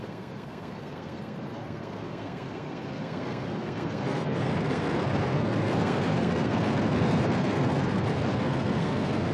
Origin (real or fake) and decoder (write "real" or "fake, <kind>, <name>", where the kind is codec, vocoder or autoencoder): fake, codec, SNAC